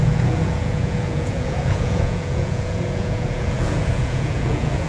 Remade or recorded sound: remade